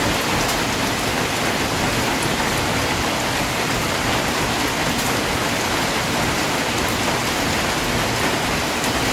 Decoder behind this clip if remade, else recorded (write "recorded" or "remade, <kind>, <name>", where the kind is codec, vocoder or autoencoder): recorded